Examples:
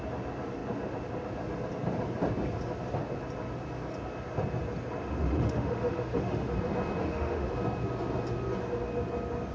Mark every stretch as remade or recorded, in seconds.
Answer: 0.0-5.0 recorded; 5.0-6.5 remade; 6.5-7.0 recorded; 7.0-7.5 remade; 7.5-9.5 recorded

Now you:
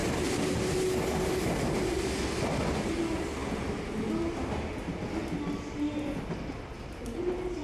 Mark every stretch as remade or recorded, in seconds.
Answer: 0.0-7.6 recorded

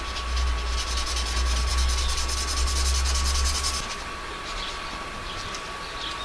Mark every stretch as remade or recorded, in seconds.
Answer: 0.0-6.2 recorded

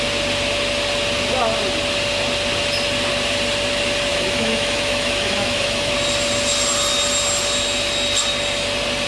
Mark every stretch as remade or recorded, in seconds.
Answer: 0.0-4.1 recorded; 4.1-5.9 remade; 5.9-9.1 recorded

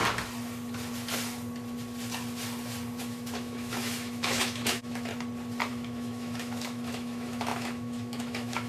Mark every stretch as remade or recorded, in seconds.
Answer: 0.0-3.0 recorded; 3.0-5.1 remade; 5.1-5.7 recorded; 5.7-8.7 remade